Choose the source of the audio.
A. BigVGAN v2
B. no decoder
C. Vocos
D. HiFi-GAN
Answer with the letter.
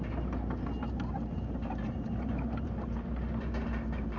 A